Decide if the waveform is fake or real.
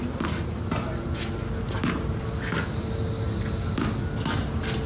real